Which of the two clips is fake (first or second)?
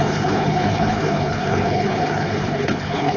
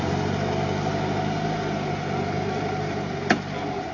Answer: first